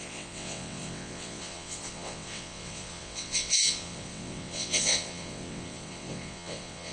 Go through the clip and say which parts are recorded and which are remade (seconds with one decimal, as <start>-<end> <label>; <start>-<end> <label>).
0.0-6.9 remade